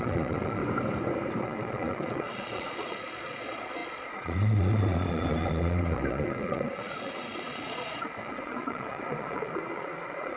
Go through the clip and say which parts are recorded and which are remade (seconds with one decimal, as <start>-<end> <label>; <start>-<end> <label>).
0.0-0.6 remade; 0.6-1.4 recorded; 1.4-10.4 remade